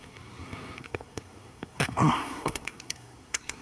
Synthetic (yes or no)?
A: yes